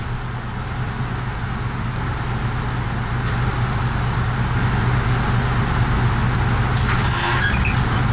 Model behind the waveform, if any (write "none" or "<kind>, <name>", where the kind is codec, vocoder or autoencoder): none